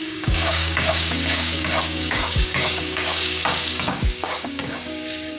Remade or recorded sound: remade